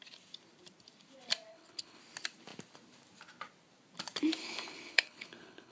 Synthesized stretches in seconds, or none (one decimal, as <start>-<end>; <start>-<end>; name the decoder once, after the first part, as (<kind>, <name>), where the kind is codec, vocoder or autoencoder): 1.5-2.0 (codec, HILCodec); 4.4-5.7